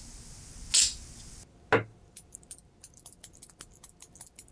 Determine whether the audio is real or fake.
real